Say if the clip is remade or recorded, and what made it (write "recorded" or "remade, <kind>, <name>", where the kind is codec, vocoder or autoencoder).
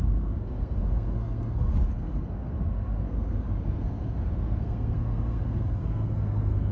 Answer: remade, codec, SNAC